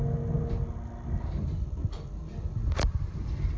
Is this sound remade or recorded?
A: recorded